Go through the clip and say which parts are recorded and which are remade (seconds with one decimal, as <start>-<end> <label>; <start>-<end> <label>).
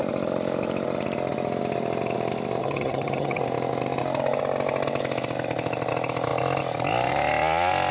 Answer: 0.0-2.6 recorded; 2.6-3.4 remade; 3.4-7.9 recorded